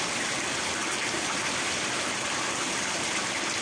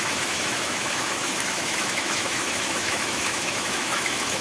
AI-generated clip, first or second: second